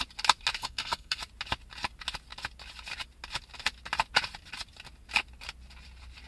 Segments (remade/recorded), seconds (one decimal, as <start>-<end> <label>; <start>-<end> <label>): 0.0-0.6 recorded; 0.6-1.2 remade; 1.2-6.3 recorded